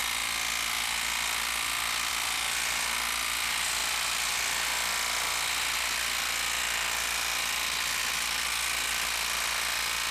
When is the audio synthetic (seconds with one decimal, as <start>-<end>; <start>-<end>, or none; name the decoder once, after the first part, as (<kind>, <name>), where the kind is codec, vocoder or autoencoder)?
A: none